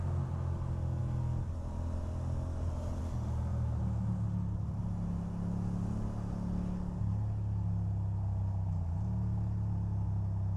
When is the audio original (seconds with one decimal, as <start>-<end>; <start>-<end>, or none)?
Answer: 0.0-10.6